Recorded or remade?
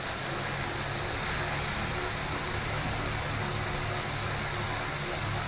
recorded